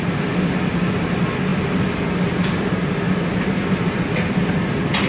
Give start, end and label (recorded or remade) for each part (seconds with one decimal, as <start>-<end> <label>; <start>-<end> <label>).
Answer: 0.0-5.1 recorded